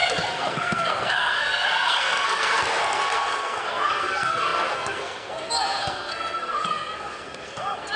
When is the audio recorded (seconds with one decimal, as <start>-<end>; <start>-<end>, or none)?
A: none